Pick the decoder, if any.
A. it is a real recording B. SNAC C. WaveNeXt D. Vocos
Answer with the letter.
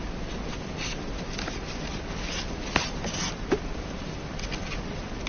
A